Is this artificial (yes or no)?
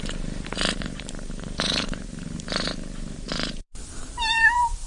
yes